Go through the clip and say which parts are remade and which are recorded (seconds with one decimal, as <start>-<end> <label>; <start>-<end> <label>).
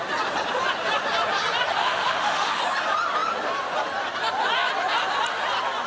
0.0-1.8 recorded; 1.8-2.6 remade; 2.6-5.9 recorded